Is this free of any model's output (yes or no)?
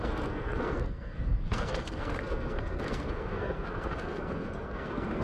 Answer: no